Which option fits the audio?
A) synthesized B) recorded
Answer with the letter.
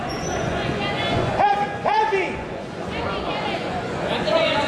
A